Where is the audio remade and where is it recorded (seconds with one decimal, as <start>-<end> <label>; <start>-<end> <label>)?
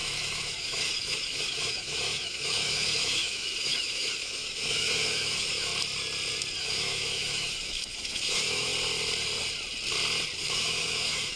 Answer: 0.0-5.7 remade; 5.7-6.6 recorded; 6.6-8.7 remade; 8.7-10.4 recorded; 10.4-11.4 remade